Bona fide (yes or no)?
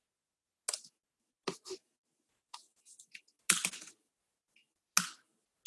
yes